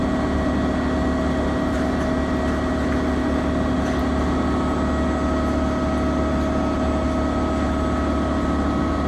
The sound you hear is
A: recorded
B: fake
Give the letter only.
A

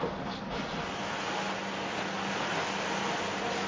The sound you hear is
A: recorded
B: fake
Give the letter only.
A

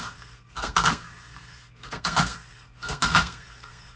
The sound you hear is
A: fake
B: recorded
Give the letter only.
A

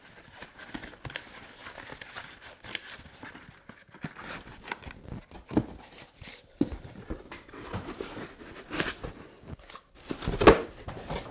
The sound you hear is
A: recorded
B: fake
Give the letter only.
A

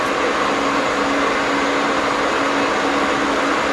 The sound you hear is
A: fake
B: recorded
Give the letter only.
B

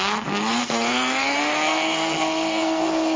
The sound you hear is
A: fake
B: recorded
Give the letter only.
A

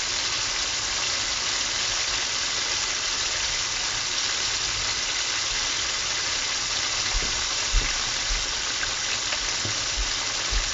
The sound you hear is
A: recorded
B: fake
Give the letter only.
A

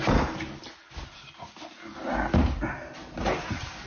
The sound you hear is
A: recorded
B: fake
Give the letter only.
A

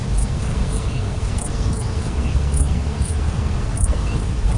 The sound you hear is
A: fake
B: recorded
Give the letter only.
A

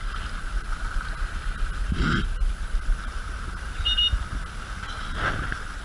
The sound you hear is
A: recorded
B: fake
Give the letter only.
A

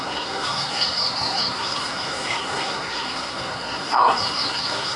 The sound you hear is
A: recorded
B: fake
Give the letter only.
B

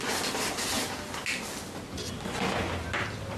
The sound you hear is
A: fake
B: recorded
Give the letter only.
B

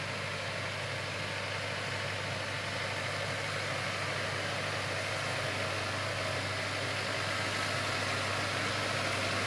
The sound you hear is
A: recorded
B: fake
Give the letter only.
A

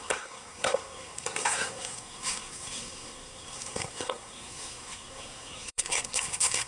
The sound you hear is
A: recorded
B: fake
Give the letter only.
B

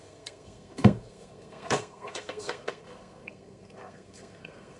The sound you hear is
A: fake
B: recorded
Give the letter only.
A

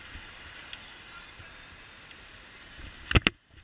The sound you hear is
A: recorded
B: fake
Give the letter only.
A